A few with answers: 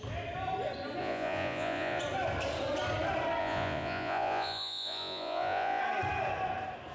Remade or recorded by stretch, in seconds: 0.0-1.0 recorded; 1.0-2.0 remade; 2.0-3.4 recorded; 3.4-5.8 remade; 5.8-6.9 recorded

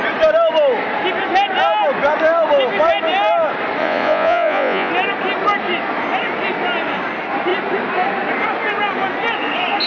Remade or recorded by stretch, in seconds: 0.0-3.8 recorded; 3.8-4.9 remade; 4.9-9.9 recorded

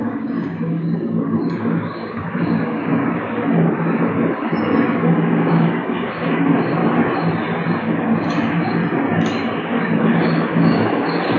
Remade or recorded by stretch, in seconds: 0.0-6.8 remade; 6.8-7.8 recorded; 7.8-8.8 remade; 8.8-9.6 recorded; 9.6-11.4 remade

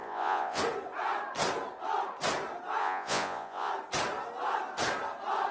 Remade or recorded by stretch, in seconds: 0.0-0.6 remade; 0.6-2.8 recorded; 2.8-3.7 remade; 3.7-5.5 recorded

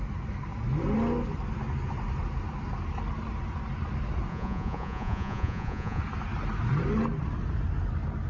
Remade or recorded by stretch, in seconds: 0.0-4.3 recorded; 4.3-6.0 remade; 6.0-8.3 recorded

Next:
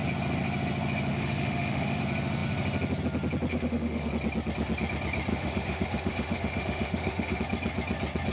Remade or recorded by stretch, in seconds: 0.0-1.1 recorded; 1.1-2.0 remade; 2.0-3.5 recorded; 3.5-4.1 remade; 4.1-5.3 recorded; 5.3-7.4 remade; 7.4-8.3 recorded

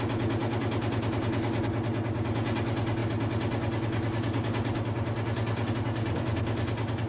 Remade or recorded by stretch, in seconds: 0.0-7.1 recorded

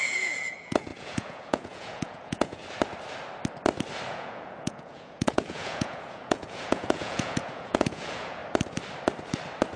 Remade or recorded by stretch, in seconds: 0.0-2.6 remade; 2.6-4.1 recorded; 4.1-8.4 remade; 8.4-9.8 recorded